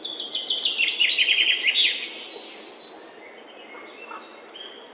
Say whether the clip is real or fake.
real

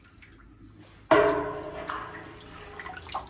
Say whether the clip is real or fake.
real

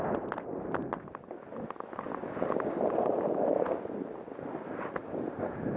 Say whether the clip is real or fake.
real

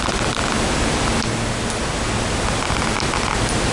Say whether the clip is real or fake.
real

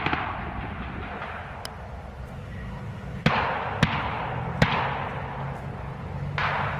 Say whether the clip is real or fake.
real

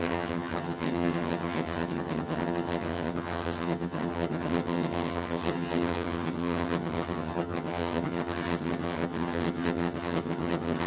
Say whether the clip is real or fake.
fake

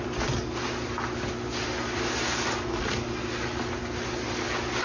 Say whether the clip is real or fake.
real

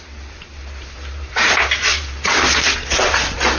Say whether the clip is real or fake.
fake